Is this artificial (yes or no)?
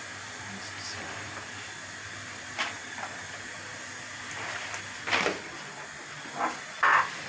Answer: no